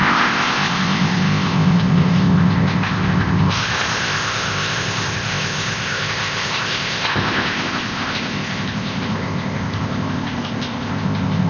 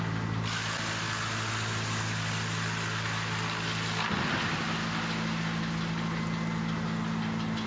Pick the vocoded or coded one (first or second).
first